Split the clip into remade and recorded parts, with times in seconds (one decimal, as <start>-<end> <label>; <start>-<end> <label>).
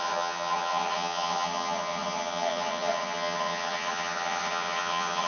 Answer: 0.0-5.3 remade